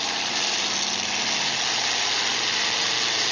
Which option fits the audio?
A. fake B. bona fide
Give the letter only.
B